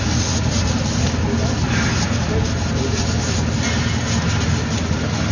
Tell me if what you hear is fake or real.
real